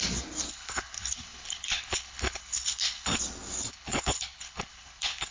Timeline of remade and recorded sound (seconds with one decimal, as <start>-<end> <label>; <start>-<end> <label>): 0.0-0.5 recorded; 0.5-3.2 remade; 3.2-3.7 recorded; 3.7-5.3 remade